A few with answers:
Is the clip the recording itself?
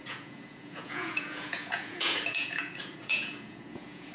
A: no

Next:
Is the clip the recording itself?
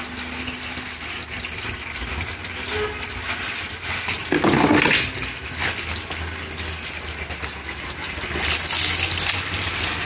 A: yes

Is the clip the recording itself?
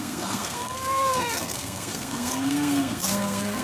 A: no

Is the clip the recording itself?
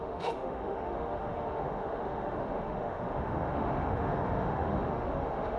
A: no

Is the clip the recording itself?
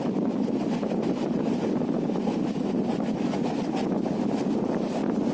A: yes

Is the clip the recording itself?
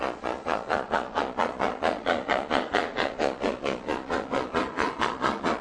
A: no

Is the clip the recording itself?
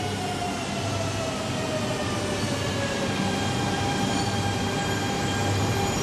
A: yes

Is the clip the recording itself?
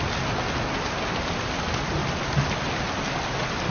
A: yes